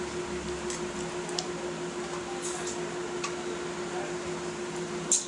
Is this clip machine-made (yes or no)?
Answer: no